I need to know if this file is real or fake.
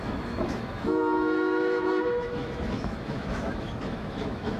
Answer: fake